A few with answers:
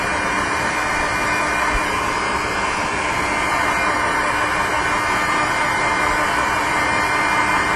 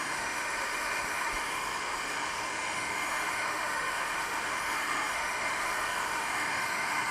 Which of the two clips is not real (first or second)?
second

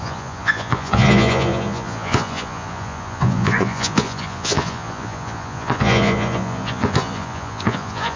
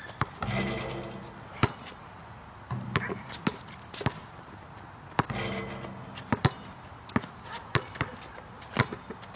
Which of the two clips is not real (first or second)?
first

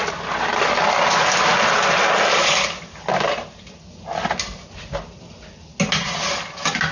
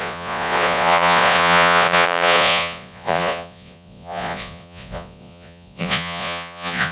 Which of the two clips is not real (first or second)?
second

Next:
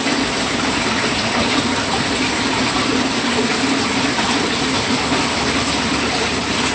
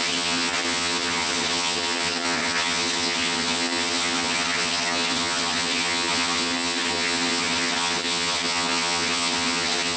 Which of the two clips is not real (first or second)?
second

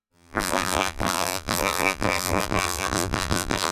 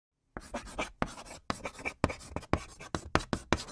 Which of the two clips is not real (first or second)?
first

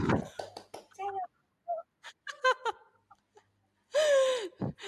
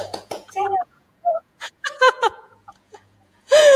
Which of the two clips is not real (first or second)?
second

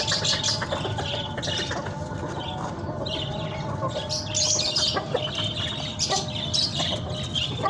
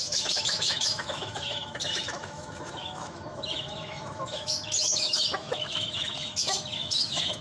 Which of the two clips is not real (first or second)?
second